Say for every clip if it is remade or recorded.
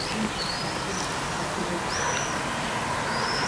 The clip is recorded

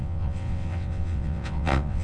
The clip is remade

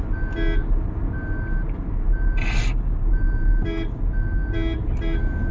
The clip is recorded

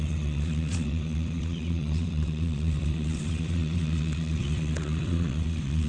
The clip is remade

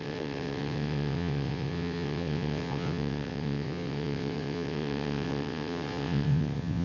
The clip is remade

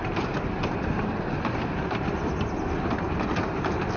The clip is recorded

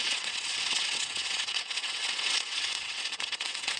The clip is remade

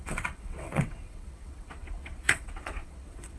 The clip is remade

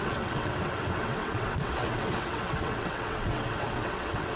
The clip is remade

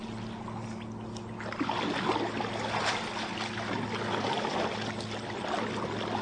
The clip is recorded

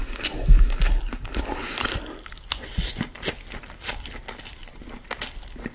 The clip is recorded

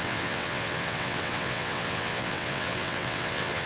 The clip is remade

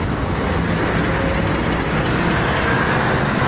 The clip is recorded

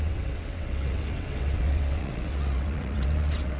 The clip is remade